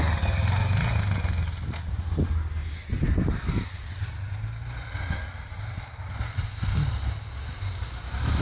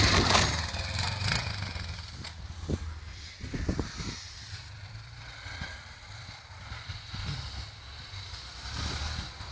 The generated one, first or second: second